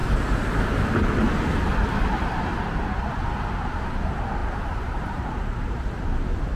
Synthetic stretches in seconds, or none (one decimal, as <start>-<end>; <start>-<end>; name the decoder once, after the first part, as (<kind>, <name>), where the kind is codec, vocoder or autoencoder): 4.4-5.2 (vocoder, BigVGAN v2)